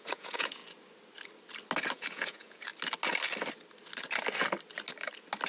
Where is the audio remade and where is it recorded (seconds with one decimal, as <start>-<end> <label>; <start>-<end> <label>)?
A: 0.0-0.6 remade; 0.6-1.9 recorded; 1.9-2.7 remade; 2.7-5.5 recorded